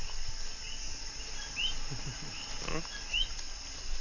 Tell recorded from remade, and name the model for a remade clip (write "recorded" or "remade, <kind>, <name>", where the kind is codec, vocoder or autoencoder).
recorded